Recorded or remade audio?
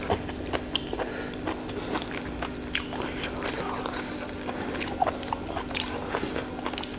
recorded